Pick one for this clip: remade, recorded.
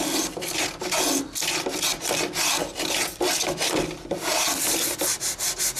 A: recorded